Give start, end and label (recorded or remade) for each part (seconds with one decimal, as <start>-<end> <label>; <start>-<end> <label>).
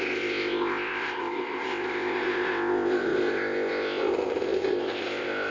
0.0-5.5 remade